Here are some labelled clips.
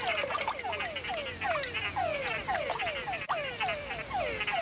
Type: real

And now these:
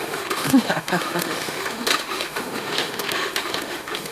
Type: fake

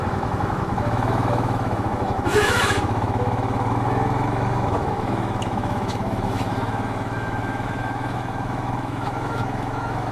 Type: fake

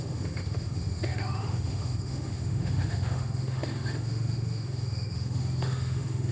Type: fake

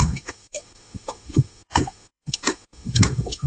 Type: fake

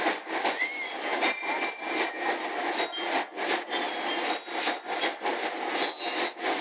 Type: real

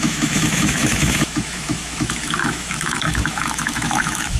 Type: fake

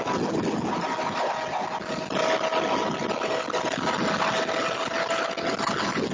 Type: real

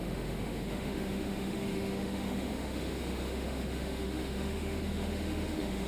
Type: fake